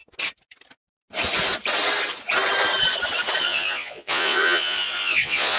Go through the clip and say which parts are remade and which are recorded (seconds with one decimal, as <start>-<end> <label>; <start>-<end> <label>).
0.0-3.4 recorded; 3.4-5.6 remade